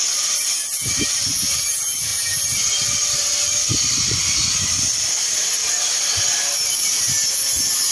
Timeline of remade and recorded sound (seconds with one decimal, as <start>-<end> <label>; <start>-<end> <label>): 0.0-7.9 recorded